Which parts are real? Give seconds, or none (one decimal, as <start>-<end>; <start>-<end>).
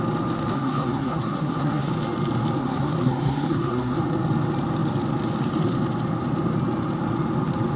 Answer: 0.0-0.5; 1.9-2.6; 4.0-7.8